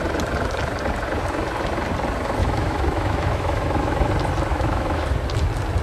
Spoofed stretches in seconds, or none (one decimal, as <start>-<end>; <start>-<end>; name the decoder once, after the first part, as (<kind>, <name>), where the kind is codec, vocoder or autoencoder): 2.4-4.1 (autoencoder, DAC-VAE); 4.5-5.0